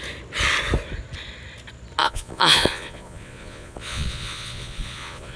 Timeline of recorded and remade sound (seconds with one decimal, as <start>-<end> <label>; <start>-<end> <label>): 0.0-2.0 recorded; 2.0-5.4 remade